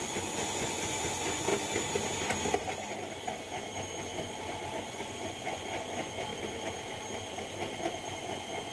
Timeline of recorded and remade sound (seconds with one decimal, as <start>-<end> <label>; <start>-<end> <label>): 0.0-1.5 remade; 1.5-4.0 recorded; 4.0-6.3 remade; 6.3-8.1 recorded; 8.1-8.7 remade